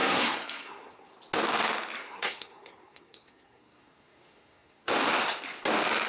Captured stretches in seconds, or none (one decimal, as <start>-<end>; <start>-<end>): 1.1-2.0; 4.9-6.1